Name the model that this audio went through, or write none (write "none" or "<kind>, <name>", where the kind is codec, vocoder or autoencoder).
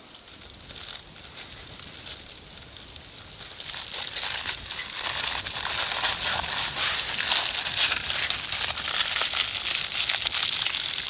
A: none